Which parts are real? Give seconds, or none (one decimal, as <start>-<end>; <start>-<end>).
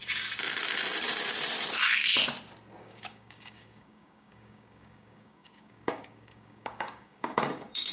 0.0-2.8